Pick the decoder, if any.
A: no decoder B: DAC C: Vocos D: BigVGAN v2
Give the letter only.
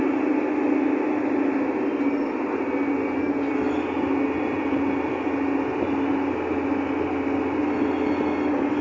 A